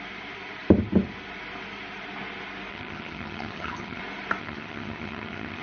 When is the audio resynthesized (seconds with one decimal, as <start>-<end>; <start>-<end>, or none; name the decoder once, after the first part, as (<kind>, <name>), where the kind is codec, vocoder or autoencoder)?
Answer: 2.7-4.0 (vocoder, HiFi-GAN); 4.4-5.6